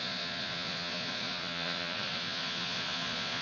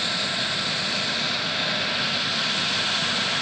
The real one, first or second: second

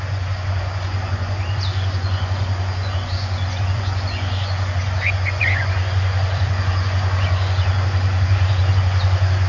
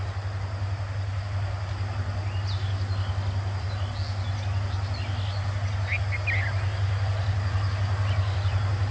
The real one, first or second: second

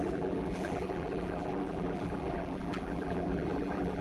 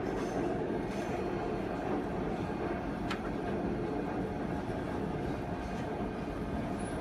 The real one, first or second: second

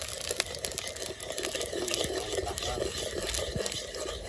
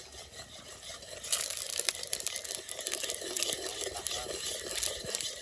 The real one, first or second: first